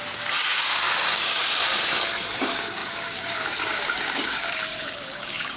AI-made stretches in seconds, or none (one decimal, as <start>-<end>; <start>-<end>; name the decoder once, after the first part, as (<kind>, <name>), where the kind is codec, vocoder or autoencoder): 0.0-1.6 (codec, DAC); 2.4-5.6